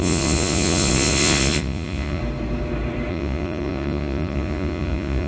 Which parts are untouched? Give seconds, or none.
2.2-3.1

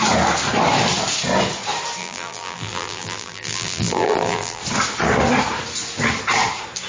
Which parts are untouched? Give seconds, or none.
0.0-2.0; 4.6-6.9

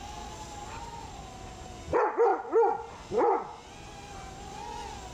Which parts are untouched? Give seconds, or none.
0.0-5.1

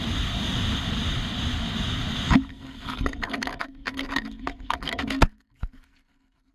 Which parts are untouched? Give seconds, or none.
0.0-2.5

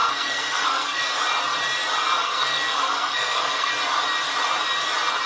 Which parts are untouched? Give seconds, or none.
1.0-2.2; 3.7-5.3

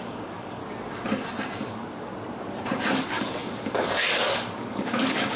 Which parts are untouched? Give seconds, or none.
0.6-1.7; 2.1-2.9

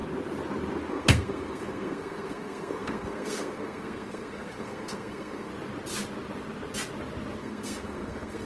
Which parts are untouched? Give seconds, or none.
0.0-0.9; 5.5-7.4